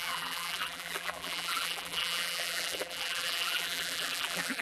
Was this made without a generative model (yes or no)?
no